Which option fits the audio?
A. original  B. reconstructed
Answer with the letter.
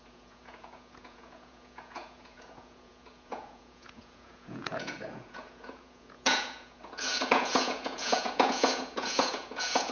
B